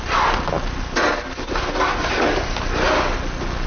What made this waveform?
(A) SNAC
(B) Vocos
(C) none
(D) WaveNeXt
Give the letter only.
C